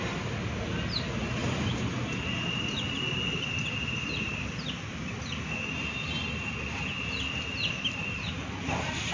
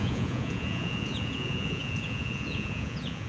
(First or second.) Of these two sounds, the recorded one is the first